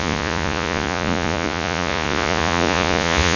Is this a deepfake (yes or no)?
yes